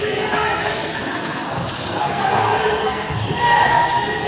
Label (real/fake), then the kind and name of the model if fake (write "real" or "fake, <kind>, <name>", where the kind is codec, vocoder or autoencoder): fake, codec, SNAC